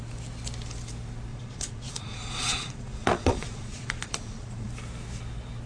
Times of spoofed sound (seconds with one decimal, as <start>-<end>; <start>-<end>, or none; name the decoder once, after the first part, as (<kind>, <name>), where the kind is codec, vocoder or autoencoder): 1.3-4.7 (vocoder, Vocos)